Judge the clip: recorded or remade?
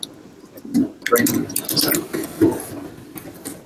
recorded